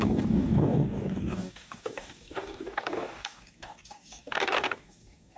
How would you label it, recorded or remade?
remade